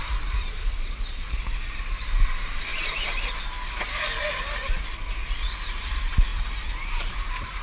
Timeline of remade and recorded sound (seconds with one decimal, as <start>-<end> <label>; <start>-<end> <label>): 0.0-1.8 remade; 1.8-2.7 recorded; 2.7-3.4 remade; 3.4-6.3 recorded; 6.3-7.6 remade